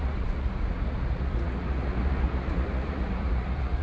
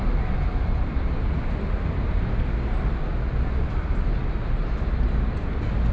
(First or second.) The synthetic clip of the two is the first